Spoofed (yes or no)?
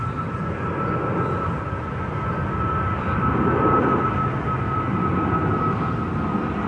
no